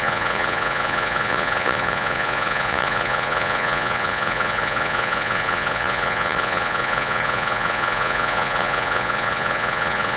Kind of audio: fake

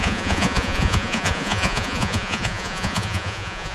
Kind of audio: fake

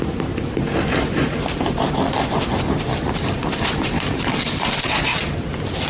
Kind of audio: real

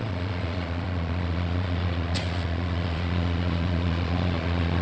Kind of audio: fake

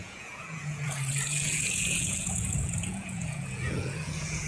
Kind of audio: fake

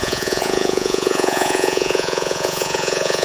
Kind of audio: fake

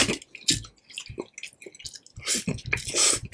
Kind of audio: real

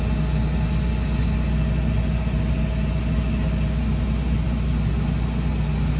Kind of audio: real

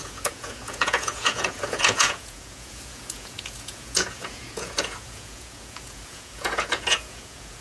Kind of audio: fake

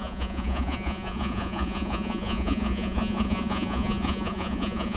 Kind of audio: fake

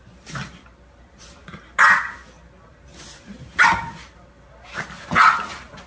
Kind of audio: real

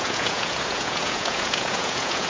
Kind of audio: fake